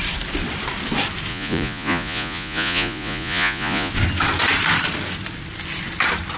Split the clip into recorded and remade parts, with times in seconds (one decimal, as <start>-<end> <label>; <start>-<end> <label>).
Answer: 0.0-1.3 recorded; 1.3-3.9 remade; 3.9-6.4 recorded